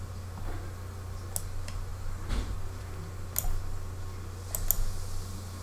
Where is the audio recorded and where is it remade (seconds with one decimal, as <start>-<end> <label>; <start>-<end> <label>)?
0.0-5.6 recorded

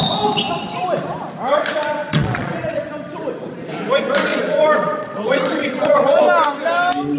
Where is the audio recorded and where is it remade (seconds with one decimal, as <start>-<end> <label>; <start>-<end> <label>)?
0.0-2.0 recorded; 2.0-2.8 remade; 2.8-4.3 recorded; 4.3-6.2 remade; 6.2-7.2 recorded

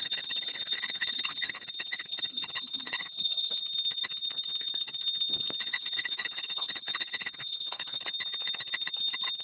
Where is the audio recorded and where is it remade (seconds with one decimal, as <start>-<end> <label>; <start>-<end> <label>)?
0.0-3.6 remade; 3.6-5.7 recorded; 5.7-8.1 remade; 8.1-9.4 recorded

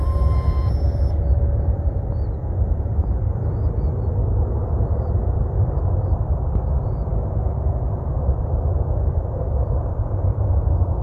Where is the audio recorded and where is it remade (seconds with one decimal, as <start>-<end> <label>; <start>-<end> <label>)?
0.0-7.1 remade; 7.1-7.9 recorded; 7.9-11.0 remade

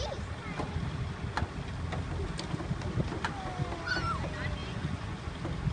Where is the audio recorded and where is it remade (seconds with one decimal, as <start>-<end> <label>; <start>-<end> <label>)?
0.0-4.6 recorded; 4.6-5.3 remade; 5.3-5.7 recorded

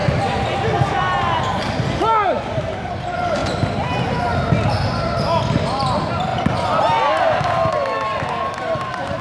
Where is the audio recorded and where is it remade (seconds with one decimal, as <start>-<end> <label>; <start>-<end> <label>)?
0.0-9.2 recorded

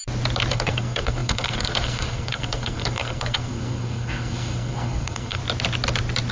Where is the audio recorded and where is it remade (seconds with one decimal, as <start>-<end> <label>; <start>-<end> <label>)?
0.0-0.5 recorded; 0.5-5.4 remade; 5.4-6.3 recorded

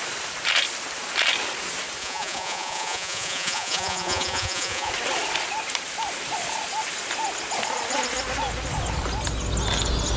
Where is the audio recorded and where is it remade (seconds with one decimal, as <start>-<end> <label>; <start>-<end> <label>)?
0.0-2.0 recorded; 2.0-4.9 remade; 4.9-10.2 recorded